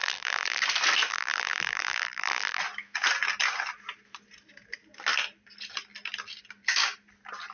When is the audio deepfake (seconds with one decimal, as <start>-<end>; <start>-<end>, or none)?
0.0-0.6; 1.1-2.6